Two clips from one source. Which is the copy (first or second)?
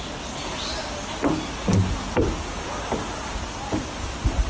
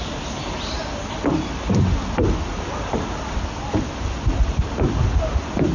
second